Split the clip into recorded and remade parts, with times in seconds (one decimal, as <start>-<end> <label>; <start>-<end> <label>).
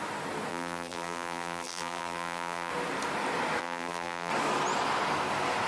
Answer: 0.0-0.5 recorded; 0.5-2.7 remade; 2.7-3.6 recorded; 3.6-4.3 remade; 4.3-5.7 recorded